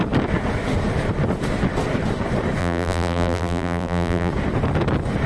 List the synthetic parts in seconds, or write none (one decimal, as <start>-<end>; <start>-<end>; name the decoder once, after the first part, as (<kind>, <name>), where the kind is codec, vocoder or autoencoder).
2.6-4.3 (vocoder, BigVGAN v2)